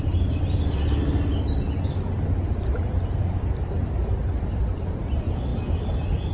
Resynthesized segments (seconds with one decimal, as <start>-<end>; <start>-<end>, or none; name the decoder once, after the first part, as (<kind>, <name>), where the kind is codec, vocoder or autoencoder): none